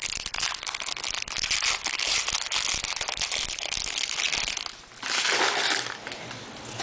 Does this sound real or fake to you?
real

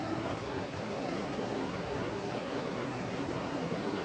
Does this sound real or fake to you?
fake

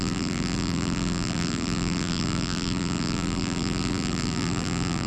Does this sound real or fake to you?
fake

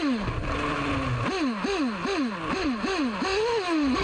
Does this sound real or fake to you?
real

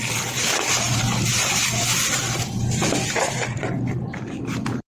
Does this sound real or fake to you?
fake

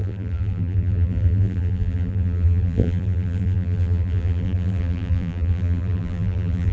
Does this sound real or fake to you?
fake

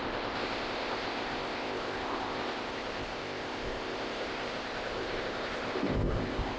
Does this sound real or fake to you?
fake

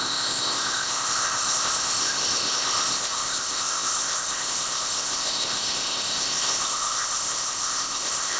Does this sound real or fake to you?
fake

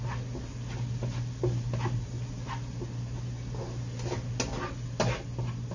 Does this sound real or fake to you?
real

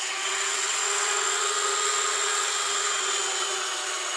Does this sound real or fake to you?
fake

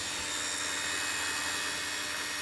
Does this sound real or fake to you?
real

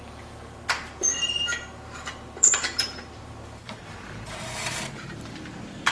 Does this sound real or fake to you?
fake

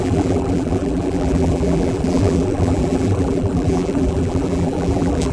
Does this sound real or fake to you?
fake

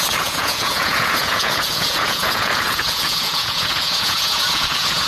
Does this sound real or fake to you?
fake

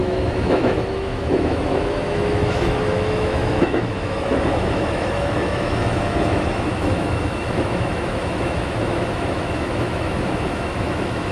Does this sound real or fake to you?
fake